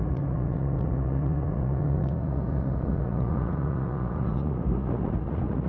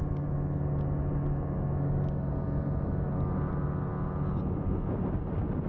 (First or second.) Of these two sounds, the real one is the second